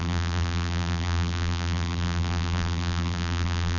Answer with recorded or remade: remade